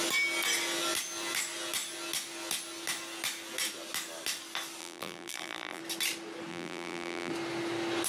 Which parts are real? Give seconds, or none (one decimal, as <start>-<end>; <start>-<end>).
0.0-4.8; 5.8-6.5; 7.3-8.1